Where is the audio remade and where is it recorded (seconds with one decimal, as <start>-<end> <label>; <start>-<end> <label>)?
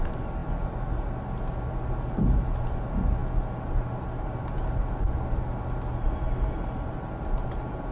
0.0-7.9 recorded